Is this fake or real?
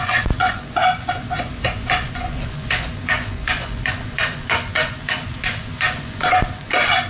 fake